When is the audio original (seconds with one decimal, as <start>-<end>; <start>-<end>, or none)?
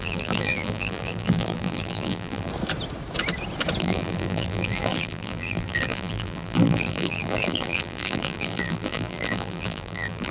2.5-3.8